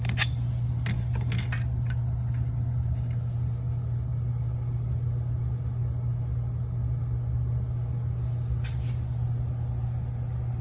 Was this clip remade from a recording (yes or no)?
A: no